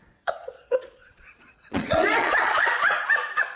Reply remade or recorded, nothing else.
remade